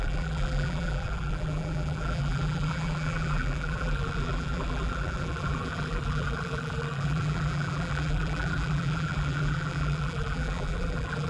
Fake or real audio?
fake